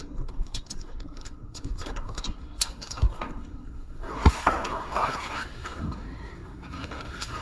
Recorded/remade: remade